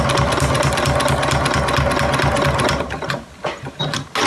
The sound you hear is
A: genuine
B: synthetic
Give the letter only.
A